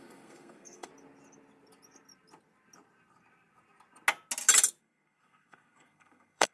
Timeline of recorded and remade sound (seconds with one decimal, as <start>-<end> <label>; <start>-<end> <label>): 0.0-0.9 remade; 0.9-4.8 recorded; 4.8-6.5 remade